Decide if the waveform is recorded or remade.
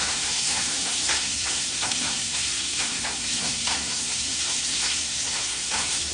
remade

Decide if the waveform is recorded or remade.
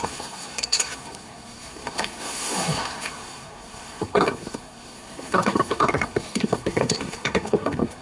remade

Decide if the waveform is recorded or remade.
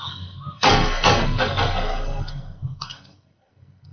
remade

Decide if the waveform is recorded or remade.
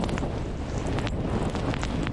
recorded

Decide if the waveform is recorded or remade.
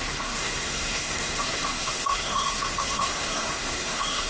remade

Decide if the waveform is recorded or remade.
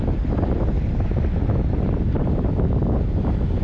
recorded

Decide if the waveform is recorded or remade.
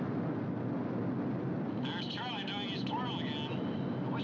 recorded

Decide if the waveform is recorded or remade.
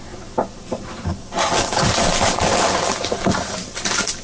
recorded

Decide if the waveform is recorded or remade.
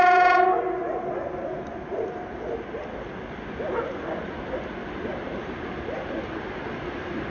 recorded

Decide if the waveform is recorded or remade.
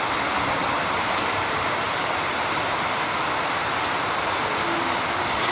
recorded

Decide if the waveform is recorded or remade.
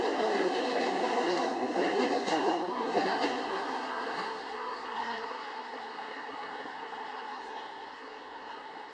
remade